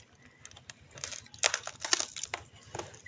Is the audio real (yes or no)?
yes